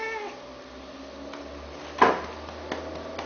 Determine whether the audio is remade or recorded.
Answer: recorded